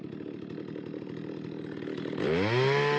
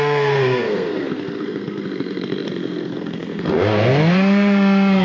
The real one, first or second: first